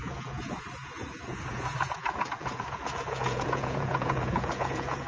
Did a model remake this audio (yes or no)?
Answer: yes